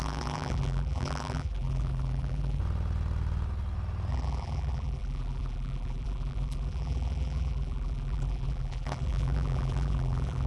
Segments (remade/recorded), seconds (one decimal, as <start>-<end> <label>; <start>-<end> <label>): 0.0-2.6 remade; 2.6-4.1 recorded; 4.1-10.5 remade